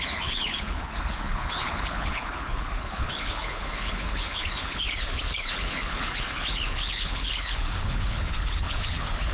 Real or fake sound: fake